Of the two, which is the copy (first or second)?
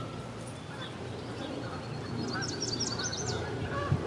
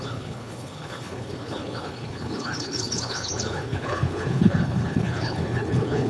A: second